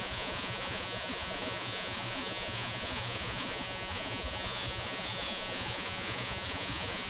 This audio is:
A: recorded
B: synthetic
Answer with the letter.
B